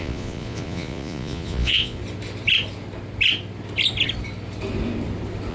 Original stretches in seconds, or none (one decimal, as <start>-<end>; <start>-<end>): 2.0-5.5